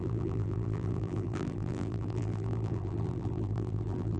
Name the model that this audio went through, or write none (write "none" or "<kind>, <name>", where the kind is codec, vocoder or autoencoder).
vocoder, BigVGAN v2